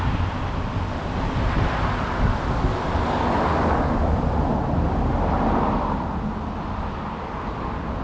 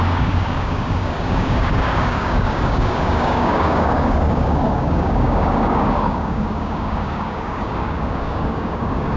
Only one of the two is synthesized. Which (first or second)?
second